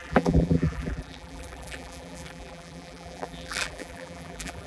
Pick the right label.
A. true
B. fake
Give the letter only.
B